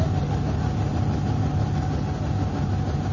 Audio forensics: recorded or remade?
recorded